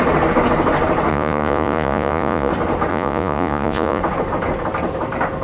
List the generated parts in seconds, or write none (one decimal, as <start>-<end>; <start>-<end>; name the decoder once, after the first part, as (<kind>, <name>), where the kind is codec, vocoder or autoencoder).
1.1-2.5 (vocoder, Vocos); 2.9-4.0

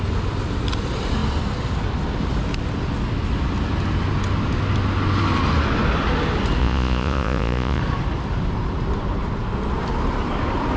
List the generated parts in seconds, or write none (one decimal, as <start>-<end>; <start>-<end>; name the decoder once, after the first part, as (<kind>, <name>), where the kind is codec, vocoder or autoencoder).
6.6-7.8 (vocoder, Vocos)

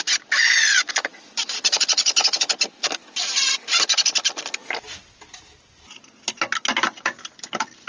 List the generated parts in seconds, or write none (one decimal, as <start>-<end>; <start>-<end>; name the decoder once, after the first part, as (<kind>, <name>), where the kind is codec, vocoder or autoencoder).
0.6-2.5 (vocoder, Vocos)

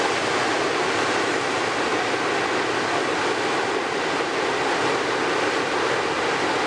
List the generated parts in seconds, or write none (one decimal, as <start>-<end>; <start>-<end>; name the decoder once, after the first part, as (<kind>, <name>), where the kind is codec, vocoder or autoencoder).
none

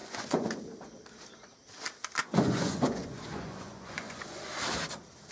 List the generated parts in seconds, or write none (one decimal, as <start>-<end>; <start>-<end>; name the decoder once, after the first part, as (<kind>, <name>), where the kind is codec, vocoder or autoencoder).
0.0-0.6 (vocoder, Vocos); 2.2-4.5

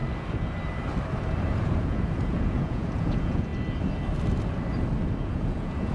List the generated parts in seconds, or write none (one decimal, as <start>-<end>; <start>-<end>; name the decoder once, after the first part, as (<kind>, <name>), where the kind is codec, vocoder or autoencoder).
1.6-3.5 (vocoder, Vocos); 5.2-5.9